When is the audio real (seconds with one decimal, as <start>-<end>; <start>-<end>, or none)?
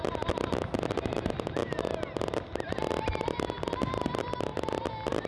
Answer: 0.0-5.3